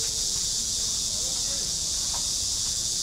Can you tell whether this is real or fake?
fake